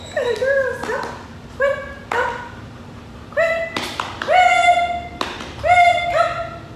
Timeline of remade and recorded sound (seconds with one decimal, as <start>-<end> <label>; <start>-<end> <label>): 0.0-6.8 recorded